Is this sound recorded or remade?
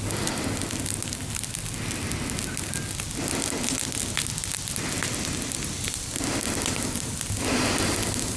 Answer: recorded